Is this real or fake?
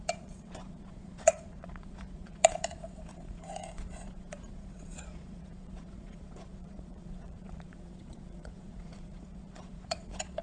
fake